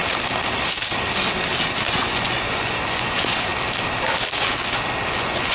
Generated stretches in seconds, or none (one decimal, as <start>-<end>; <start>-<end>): 1.9-3.5; 5.1-5.5